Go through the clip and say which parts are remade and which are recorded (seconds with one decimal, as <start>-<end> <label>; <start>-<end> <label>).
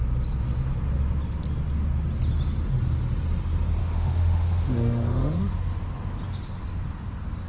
0.0-3.8 recorded; 3.8-5.4 remade; 5.4-7.5 recorded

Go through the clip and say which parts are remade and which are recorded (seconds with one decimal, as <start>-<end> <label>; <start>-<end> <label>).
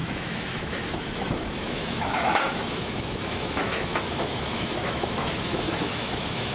0.0-6.5 remade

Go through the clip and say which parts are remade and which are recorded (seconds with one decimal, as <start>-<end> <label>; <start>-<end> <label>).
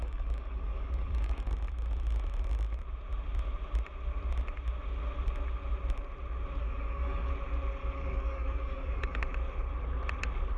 0.0-1.5 remade; 1.5-6.6 recorded; 6.6-7.3 remade; 7.3-7.8 recorded; 7.8-9.2 remade; 9.2-10.6 recorded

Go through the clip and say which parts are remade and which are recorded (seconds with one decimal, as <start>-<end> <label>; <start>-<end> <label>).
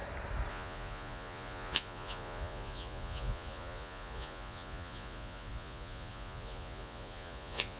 0.0-0.5 recorded; 0.5-7.8 remade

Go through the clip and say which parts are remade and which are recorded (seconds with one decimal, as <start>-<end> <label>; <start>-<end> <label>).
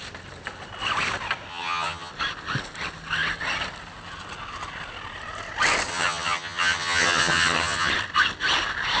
0.0-1.5 recorded; 1.5-2.1 remade; 2.1-5.9 recorded; 5.9-7.9 remade; 7.9-9.0 recorded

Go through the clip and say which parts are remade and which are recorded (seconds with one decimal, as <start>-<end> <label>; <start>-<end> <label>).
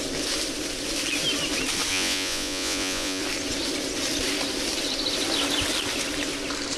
0.0-1.9 recorded; 1.9-3.2 remade; 3.2-6.8 recorded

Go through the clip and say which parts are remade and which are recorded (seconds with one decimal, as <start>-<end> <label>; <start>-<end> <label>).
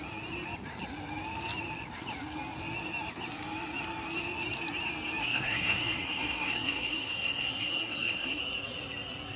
0.0-5.2 recorded; 5.2-8.4 remade; 8.4-9.4 recorded